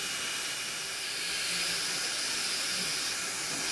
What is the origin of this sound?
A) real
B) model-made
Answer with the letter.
A